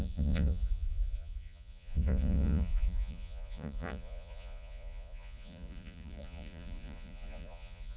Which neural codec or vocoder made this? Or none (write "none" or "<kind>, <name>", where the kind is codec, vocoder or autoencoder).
vocoder, Vocos